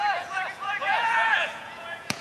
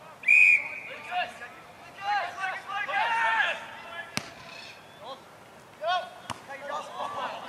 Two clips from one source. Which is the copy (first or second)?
first